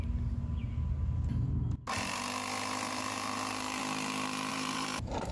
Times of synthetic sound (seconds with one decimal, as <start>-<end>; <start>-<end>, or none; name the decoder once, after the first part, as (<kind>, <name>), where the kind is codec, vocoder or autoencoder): 4.5-5.3 (vocoder, BigVGAN v2)